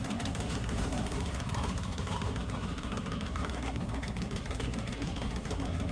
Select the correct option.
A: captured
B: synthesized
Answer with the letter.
B